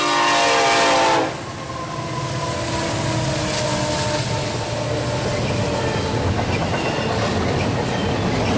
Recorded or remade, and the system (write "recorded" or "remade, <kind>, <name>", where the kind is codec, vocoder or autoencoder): recorded